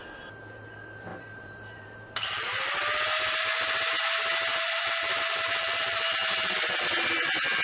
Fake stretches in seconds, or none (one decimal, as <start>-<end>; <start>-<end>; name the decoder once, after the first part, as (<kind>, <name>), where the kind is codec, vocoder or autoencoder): 1.1-2.7 (vocoder, BigVGAN v2); 4.5-6.8